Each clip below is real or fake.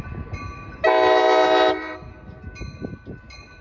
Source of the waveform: real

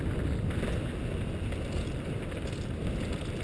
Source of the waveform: real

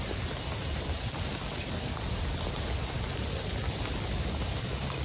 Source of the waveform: real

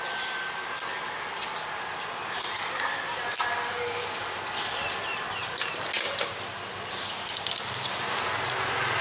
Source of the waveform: real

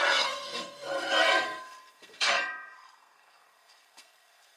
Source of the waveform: fake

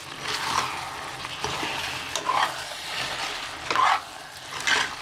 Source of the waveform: real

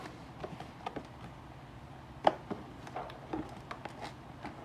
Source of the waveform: real